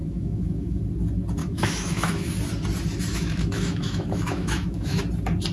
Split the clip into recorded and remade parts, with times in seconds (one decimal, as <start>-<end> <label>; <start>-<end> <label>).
0.0-0.8 remade; 0.8-1.4 recorded; 1.4-2.3 remade; 2.3-3.1 recorded; 3.1-5.0 remade; 5.0-5.5 recorded